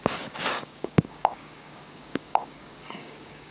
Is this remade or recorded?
remade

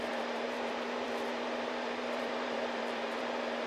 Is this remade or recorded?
remade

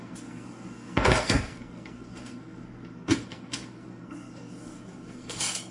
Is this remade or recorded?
remade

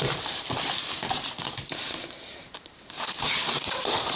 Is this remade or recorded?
remade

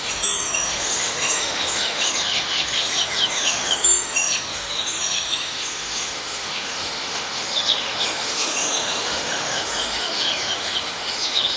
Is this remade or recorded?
remade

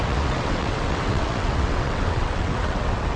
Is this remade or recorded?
remade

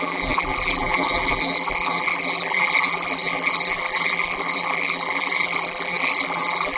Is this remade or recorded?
remade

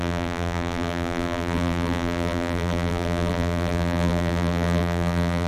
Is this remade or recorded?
remade